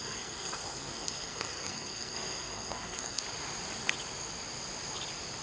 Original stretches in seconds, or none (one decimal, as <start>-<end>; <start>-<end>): 3.2-5.4